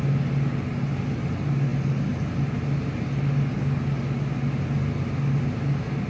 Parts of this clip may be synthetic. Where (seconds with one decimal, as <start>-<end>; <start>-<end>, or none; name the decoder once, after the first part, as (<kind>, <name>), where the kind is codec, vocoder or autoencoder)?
none